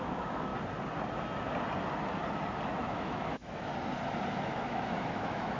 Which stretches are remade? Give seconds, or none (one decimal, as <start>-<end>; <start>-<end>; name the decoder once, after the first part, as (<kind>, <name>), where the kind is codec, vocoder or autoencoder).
0.0-0.5 (autoencoder, DAC-VAE); 2.7-3.7; 4.3-5.6